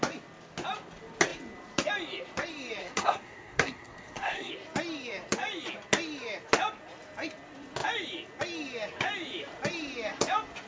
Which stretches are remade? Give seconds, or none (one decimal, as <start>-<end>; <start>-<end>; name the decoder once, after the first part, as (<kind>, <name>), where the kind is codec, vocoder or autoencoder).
2.8-4.5 (codec, SNAC)